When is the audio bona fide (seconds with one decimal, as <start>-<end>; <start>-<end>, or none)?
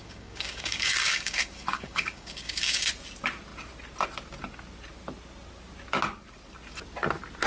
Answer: 2.9-7.5